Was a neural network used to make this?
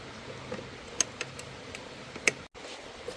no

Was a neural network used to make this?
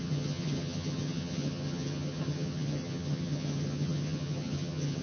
yes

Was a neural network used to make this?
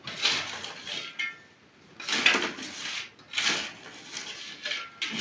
no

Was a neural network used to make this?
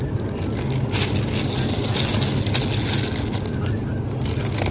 no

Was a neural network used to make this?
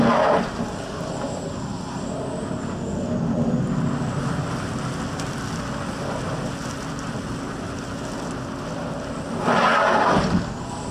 no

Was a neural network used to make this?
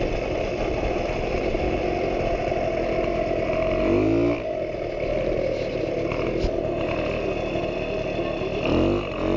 no